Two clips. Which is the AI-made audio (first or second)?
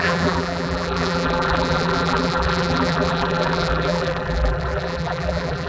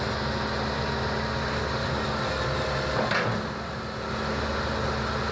first